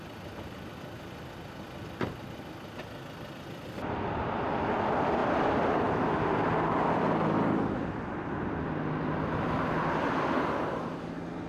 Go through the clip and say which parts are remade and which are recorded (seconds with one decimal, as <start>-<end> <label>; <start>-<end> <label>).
0.0-11.5 recorded